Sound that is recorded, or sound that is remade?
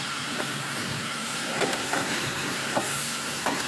remade